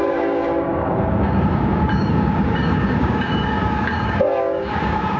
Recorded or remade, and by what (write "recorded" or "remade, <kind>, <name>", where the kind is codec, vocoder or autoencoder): remade, codec, DAC